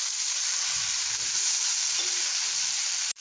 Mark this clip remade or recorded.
remade